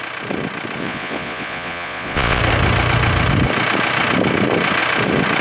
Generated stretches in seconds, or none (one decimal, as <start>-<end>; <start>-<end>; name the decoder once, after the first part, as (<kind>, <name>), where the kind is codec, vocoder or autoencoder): 0.8-2.4 (vocoder, Vocos)